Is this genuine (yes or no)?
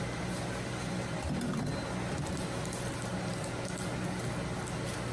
yes